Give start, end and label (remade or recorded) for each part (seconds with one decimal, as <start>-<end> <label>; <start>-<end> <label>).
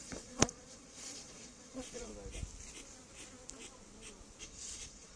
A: 0.0-2.1 remade; 2.1-4.4 recorded; 4.4-5.2 remade